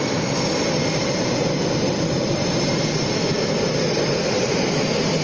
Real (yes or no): yes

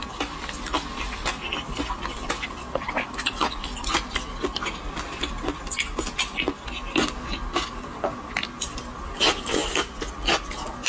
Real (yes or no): yes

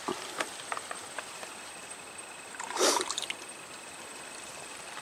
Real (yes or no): yes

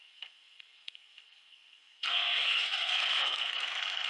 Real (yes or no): no